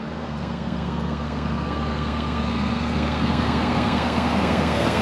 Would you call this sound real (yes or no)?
no